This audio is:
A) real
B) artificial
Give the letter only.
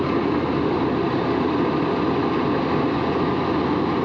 A